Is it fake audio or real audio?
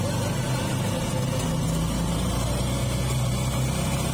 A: real